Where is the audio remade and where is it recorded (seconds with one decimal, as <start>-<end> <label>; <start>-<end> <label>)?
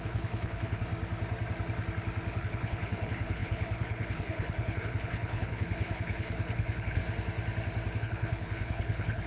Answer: 0.0-0.9 remade; 0.9-2.4 recorded; 2.4-7.0 remade; 7.0-8.0 recorded; 8.0-9.3 remade